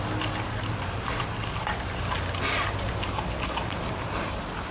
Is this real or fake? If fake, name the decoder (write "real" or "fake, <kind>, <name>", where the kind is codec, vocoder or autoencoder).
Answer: real